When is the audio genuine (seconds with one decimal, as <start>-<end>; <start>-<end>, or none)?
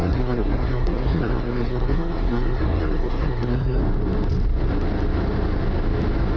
3.8-6.4